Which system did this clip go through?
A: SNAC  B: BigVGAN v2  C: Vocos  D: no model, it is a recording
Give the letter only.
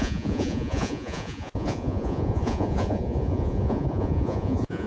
C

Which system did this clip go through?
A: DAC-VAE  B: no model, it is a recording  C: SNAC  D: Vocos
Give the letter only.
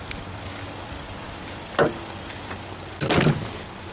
B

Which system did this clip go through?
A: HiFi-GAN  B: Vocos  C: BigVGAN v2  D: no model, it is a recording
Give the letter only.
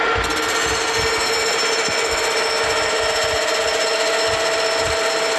D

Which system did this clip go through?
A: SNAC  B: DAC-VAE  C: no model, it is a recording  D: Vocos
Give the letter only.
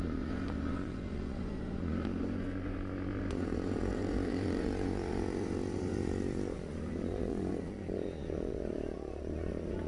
D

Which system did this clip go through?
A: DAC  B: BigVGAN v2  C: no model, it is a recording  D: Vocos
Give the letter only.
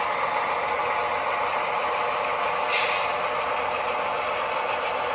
C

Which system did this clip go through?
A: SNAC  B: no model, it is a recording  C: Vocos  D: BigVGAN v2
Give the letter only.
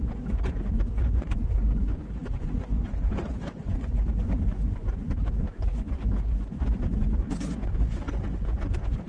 C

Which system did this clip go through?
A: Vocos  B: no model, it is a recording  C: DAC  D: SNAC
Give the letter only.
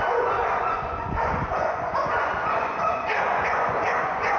A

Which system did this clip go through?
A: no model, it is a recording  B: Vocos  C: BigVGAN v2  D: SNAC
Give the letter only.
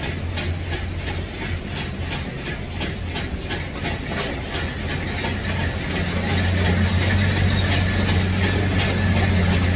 A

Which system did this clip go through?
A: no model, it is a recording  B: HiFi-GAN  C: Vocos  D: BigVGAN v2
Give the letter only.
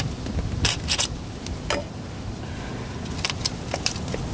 A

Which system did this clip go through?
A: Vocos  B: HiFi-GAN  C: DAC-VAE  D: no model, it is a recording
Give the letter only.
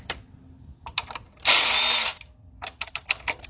D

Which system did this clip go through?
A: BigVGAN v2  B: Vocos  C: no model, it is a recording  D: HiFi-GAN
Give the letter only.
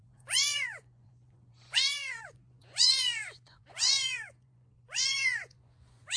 B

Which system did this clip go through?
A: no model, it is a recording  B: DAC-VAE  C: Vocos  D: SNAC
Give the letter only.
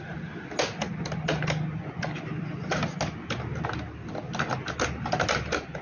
A